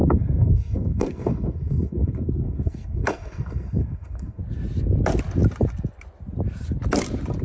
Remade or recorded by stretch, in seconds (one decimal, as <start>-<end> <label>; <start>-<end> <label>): 0.0-4.4 remade; 4.4-7.4 recorded